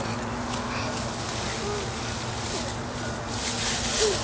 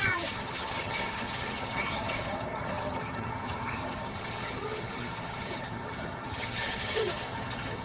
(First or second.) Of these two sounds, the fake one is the second